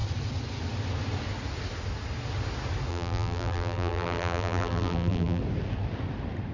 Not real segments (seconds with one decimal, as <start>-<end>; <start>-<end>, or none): 2.9-5.4